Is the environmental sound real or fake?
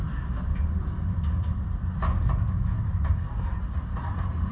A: real